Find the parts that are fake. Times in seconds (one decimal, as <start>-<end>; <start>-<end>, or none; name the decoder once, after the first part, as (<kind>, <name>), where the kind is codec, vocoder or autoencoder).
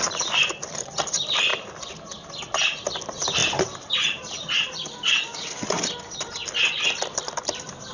0.0-1.5 (vocoder, BigVGAN v2); 3.0-3.4; 6.9-7.9